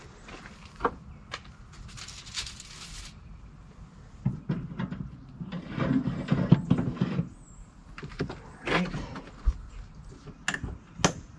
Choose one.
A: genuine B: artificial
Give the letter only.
A